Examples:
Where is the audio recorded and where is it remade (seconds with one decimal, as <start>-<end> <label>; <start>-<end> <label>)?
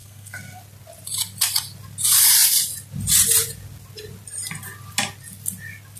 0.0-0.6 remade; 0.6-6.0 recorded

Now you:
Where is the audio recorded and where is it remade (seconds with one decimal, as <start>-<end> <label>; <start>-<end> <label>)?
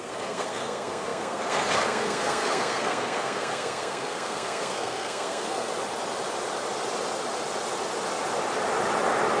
0.0-5.7 remade; 5.7-9.4 recorded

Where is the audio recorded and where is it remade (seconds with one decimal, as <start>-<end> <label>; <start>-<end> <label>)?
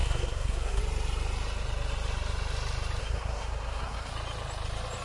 0.0-0.8 remade; 0.8-3.0 recorded; 3.0-4.1 remade; 4.1-5.0 recorded